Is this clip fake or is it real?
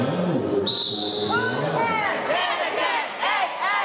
real